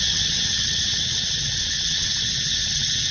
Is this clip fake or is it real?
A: fake